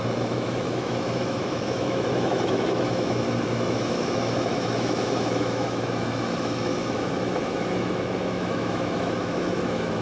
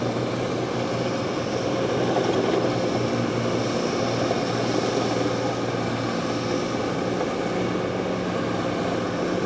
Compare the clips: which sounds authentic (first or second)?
second